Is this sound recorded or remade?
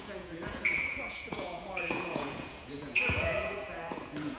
remade